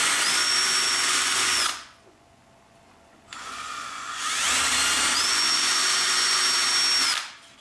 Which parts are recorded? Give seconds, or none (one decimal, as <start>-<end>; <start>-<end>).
4.3-5.3; 6.4-7.6